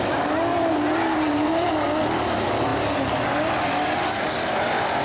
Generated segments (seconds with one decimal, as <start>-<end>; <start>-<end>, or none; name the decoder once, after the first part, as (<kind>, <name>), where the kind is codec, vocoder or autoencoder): 0.5-1.7 (vocoder, BigVGAN v2)